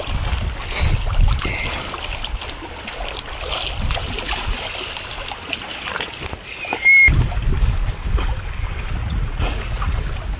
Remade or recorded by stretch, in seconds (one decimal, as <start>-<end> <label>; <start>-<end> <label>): 0.0-9.0 recorded; 9.0-10.0 remade; 10.0-10.4 recorded